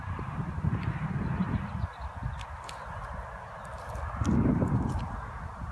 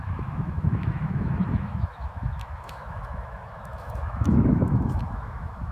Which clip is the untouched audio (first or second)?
first